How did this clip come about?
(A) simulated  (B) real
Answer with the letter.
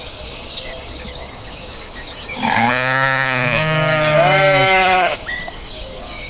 A